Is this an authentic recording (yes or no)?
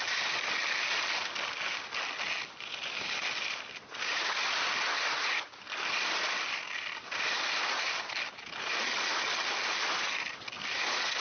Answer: yes